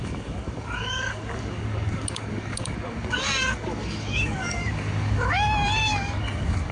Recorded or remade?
remade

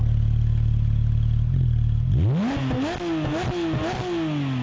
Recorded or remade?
recorded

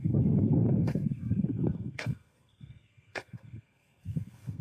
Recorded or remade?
remade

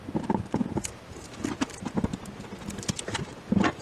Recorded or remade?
recorded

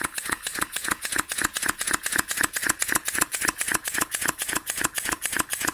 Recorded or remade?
remade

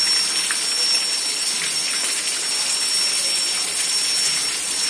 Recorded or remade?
recorded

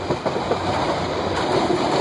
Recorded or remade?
recorded